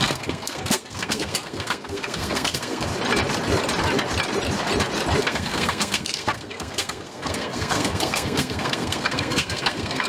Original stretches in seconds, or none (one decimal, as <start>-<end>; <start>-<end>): 2.9-5.2